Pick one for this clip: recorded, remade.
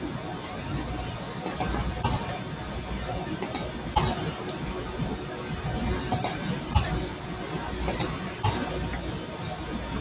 recorded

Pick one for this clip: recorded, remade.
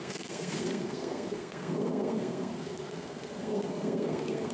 remade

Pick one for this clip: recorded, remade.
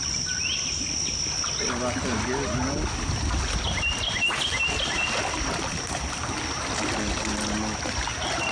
recorded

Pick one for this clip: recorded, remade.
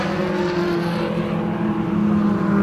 recorded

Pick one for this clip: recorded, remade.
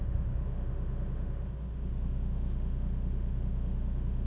remade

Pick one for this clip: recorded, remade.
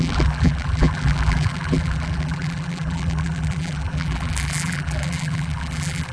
remade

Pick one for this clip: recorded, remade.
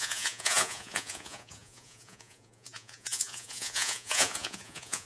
remade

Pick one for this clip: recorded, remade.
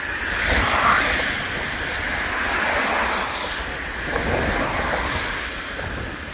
recorded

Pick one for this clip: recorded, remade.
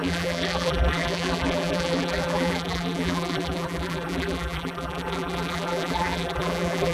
remade